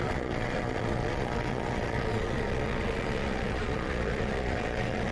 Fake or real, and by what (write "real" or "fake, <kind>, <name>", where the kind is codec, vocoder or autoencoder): fake, vocoder, Vocos